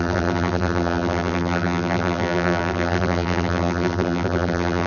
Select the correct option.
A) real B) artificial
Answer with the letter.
B